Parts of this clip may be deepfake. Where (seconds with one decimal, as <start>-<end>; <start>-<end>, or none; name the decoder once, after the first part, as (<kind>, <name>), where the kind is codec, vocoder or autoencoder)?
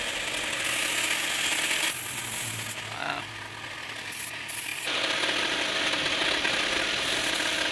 none